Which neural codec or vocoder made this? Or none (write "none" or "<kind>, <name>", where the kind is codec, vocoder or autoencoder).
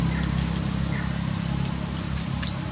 none